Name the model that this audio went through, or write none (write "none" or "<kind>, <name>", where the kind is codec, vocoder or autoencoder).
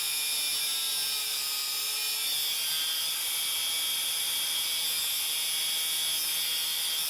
none